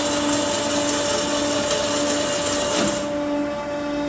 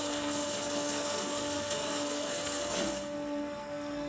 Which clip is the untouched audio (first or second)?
first